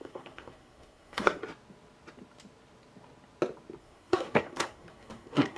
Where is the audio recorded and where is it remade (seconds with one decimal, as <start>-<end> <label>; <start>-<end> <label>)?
0.0-1.4 remade; 1.4-3.8 recorded; 3.8-5.6 remade